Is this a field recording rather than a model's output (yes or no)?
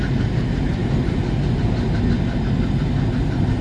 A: yes